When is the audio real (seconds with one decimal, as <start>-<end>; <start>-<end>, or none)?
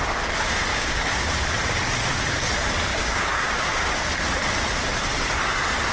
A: 0.0-0.7; 1.3-2.9; 4.2-5.9